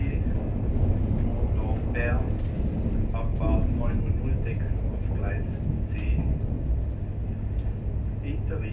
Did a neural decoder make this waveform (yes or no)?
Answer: no